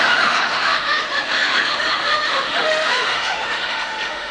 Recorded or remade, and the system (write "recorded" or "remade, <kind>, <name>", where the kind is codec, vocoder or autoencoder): remade, autoencoder, DAC-VAE